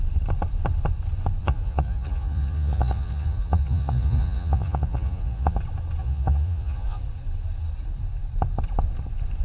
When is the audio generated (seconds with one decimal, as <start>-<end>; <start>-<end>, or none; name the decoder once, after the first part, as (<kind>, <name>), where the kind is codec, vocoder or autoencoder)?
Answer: 1.4-5.6 (vocoder, Vocos); 6.0-7.0